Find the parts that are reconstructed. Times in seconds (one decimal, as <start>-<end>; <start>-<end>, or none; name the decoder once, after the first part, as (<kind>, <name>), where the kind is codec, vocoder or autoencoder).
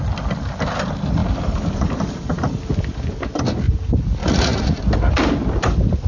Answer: 4.2-4.8 (vocoder, Vocos)